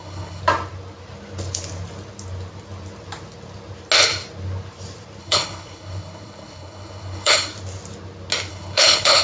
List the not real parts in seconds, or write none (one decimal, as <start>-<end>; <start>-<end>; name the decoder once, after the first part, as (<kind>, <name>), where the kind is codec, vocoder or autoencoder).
0.0-0.4 (codec, HILCodec); 5.2-7.5; 8.5-9.2